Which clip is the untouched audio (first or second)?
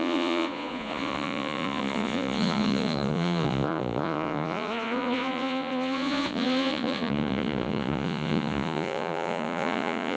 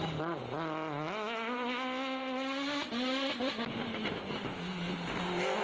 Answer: second